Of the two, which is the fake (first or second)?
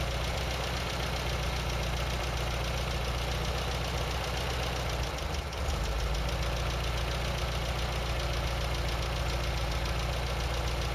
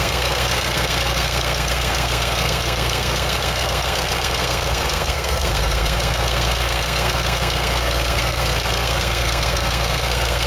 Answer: second